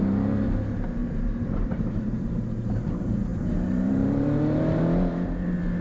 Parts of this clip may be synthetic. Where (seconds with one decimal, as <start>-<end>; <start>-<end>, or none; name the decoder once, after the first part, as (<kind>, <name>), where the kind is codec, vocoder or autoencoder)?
1.0-2.9 (vocoder, BigVGAN v2); 3.3-4.8